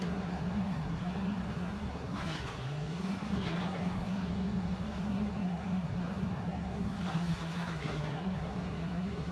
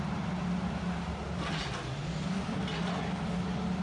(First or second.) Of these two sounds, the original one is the second